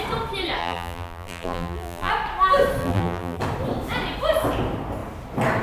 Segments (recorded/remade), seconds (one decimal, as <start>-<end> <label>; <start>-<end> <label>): 0.0-0.6 recorded; 0.6-2.1 remade; 2.1-2.8 recorded; 2.8-3.4 remade; 3.4-5.6 recorded